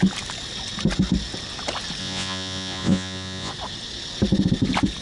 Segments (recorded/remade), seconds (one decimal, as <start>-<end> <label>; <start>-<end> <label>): 0.0-2.0 recorded; 2.0-3.5 remade; 3.5-5.0 recorded